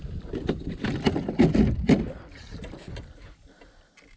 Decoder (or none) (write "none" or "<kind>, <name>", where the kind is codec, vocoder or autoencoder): none